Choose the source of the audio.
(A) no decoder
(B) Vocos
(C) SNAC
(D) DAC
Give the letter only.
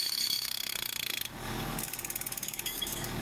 D